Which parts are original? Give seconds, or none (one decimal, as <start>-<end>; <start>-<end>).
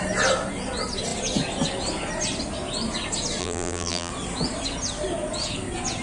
0.0-3.4; 4.1-6.0